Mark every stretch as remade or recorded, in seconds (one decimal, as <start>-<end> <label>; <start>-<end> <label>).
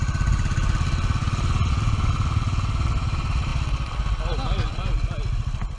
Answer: 0.0-5.8 recorded